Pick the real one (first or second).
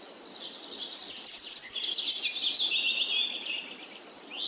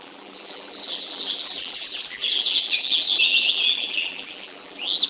first